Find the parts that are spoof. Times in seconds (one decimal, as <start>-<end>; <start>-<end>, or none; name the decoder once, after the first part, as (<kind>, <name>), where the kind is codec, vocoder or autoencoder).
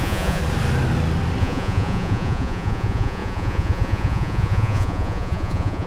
0.0-0.4 (vocoder, Vocos); 1.4-5.9